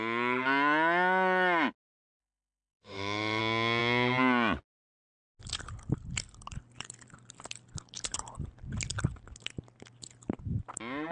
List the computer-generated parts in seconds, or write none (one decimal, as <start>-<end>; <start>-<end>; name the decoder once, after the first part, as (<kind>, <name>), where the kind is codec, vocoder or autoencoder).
2.2-3.4 (autoencoder, DAC-VAE)